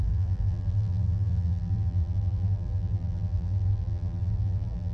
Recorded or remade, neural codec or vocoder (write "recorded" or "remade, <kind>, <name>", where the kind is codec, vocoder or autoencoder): remade, vocoder, BigVGAN v2